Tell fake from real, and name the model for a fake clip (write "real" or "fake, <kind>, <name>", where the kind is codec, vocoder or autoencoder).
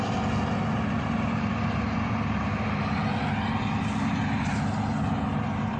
real